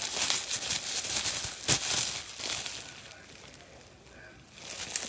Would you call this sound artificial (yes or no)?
no